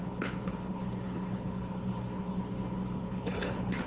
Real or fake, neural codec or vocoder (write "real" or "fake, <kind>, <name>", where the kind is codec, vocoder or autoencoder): fake, codec, HILCodec